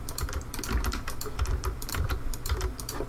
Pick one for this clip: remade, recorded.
remade